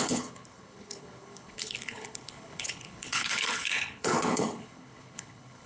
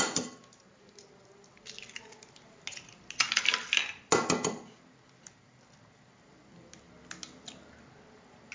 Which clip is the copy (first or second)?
first